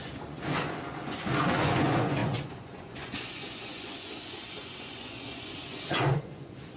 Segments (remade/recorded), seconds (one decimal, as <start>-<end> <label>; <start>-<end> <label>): 0.0-6.8 remade